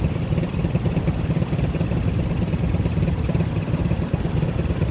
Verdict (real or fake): real